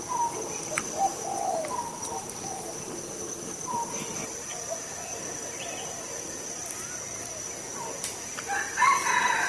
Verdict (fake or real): real